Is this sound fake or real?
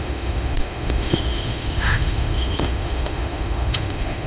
fake